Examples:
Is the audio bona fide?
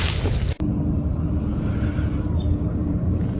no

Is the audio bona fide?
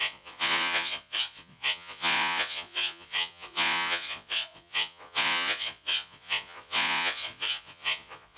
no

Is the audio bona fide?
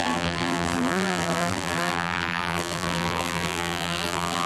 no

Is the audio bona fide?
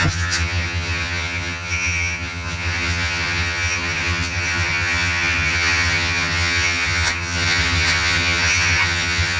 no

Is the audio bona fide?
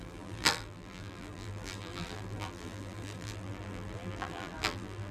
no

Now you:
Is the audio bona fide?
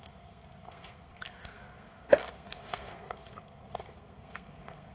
no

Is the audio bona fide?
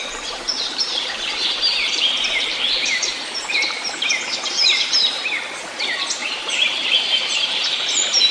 no